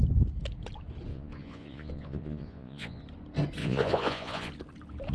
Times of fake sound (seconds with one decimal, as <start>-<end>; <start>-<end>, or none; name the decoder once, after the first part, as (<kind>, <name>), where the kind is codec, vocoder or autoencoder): 1.1-3.0 (vocoder, Vocos); 3.6-4.5